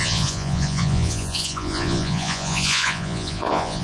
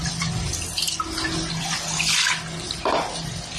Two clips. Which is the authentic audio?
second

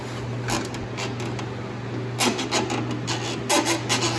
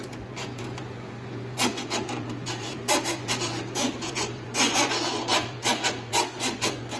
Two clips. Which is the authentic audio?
first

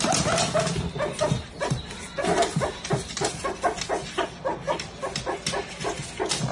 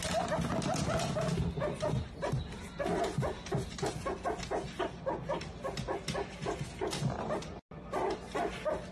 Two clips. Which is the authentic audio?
second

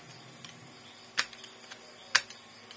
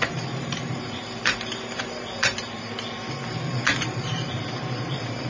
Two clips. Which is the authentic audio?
first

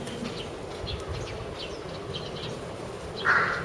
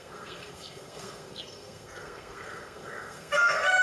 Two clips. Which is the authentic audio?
first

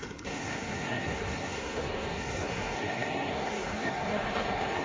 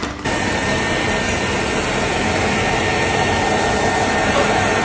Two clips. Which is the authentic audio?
second